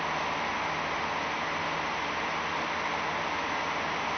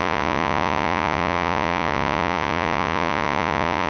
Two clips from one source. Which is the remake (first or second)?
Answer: second